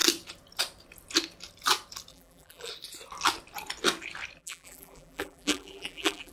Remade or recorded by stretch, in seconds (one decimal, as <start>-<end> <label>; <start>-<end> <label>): 0.0-2.1 recorded; 2.1-2.7 remade; 2.7-4.4 recorded; 4.4-6.3 remade